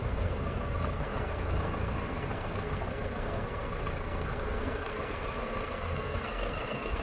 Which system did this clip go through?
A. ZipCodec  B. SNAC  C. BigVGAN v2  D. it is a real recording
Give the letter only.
B